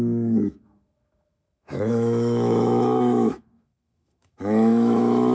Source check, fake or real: fake